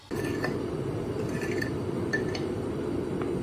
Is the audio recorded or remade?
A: recorded